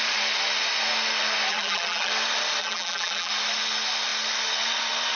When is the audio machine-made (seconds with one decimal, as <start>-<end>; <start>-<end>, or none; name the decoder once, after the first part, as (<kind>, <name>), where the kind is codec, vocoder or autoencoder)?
1.5-2.1 (vocoder, BigVGAN v2); 2.6-3.3